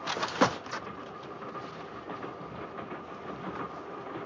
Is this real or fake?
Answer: real